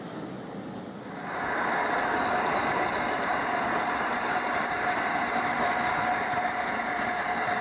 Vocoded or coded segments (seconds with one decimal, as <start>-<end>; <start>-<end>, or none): 2.6-4.8